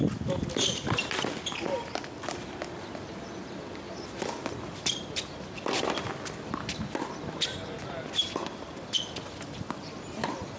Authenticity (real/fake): real